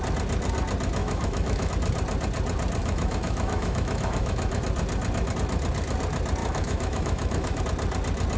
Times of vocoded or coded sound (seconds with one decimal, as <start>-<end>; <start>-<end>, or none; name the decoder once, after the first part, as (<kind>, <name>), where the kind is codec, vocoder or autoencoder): 1.0-1.7 (autoencoder, DAC-VAE); 2.8-4.6; 6.4-7.6